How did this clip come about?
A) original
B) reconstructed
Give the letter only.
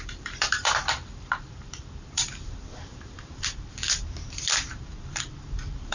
B